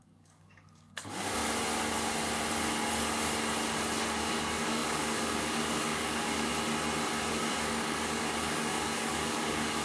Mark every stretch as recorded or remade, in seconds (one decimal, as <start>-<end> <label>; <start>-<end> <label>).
0.0-1.4 remade; 1.4-4.2 recorded; 4.2-6.5 remade; 6.5-7.3 recorded; 7.3-9.8 remade